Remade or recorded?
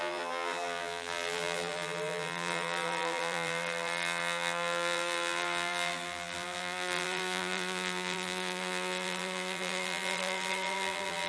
remade